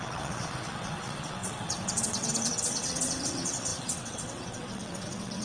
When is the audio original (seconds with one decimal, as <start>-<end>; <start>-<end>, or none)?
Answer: none